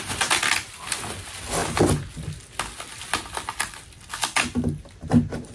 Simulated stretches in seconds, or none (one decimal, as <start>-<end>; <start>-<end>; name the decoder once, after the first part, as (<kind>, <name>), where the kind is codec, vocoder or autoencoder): none